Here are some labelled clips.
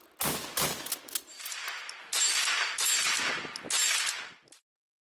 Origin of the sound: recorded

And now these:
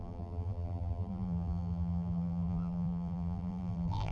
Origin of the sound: remade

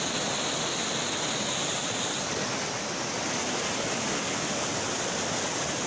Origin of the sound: recorded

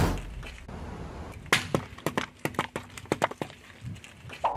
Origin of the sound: recorded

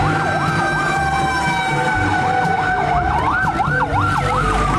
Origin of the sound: remade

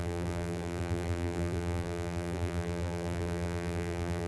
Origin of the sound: remade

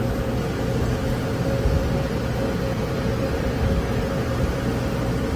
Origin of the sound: recorded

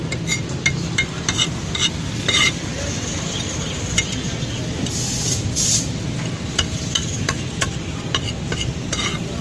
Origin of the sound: recorded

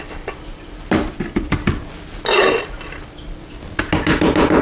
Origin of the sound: recorded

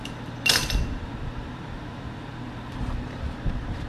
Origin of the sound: remade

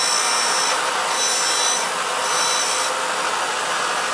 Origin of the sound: recorded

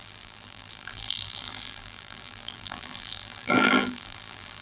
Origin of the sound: remade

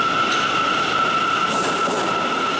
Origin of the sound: remade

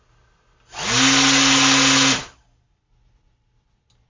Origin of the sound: recorded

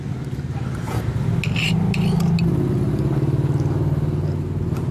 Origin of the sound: recorded